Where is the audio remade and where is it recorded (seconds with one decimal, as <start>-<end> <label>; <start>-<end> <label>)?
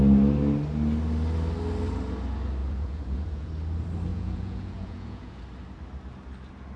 0.0-2.6 recorded; 2.6-3.5 remade; 3.5-4.1 recorded; 4.1-5.4 remade; 5.4-6.8 recorded